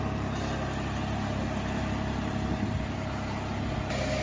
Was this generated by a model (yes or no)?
no